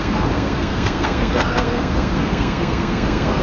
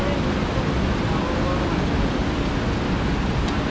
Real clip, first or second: second